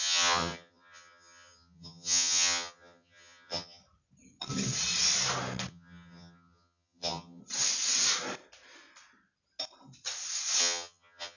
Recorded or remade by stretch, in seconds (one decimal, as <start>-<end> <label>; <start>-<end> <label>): 0.0-3.8 remade; 3.8-5.7 recorded; 5.7-7.4 remade; 7.4-10.6 recorded; 10.6-11.4 remade